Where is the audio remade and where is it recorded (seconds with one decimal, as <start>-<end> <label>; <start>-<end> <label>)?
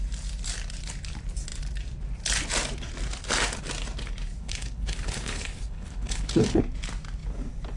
0.0-4.4 recorded; 4.4-6.6 remade; 6.6-7.8 recorded